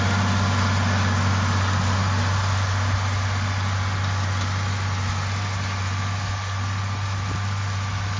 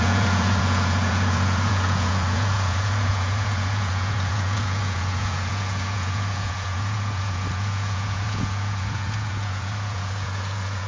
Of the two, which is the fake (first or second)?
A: second